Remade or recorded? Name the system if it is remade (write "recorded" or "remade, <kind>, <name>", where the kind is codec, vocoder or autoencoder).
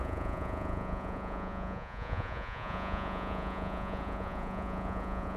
remade, vocoder, Vocos